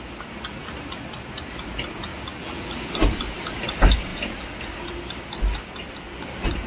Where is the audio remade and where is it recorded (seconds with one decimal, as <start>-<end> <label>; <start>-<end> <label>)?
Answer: 0.0-2.1 recorded; 2.1-2.9 remade; 2.9-6.7 recorded